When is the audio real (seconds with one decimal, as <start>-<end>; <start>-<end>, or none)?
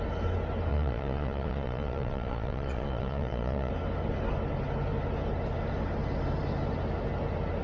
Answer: 0.0-0.7; 3.7-7.6